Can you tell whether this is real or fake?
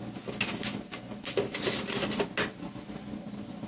real